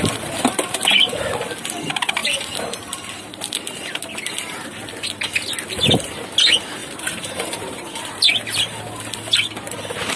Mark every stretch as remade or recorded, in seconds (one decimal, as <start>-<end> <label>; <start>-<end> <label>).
0.0-6.8 recorded; 6.8-8.0 remade; 8.0-10.2 recorded

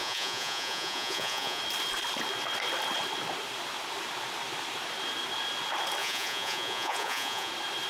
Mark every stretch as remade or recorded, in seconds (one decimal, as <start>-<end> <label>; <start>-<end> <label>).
0.0-1.6 remade; 1.6-6.0 recorded; 6.0-7.5 remade; 7.5-7.9 recorded

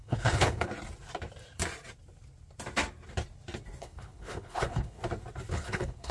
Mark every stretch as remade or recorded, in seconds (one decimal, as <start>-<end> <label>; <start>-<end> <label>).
0.0-0.7 remade; 0.7-3.8 recorded; 3.8-5.0 remade; 5.0-5.5 recorded; 5.5-6.1 remade